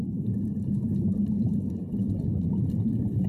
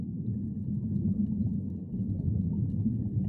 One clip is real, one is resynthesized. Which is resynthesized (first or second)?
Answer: first